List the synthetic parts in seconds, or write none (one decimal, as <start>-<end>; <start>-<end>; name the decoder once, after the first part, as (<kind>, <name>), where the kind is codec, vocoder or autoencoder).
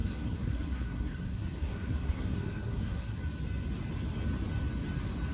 0.0-3.2 (codec, SNAC)